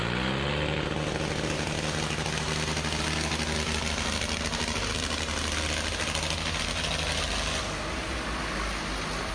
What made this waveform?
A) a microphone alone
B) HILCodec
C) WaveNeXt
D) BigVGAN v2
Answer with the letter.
A